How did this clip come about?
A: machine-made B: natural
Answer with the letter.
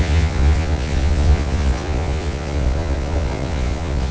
A